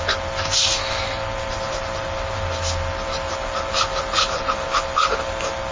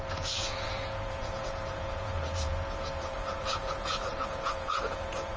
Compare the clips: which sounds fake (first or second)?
second